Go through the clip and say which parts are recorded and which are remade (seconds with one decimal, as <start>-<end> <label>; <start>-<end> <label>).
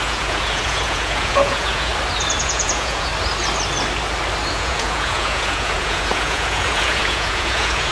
0.0-1.9 remade; 1.9-2.4 recorded; 2.4-3.1 remade; 3.1-4.5 recorded; 4.5-7.9 remade